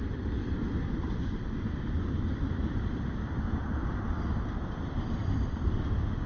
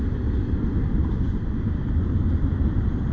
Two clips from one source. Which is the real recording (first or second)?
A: second